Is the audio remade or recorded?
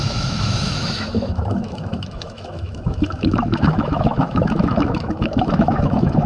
remade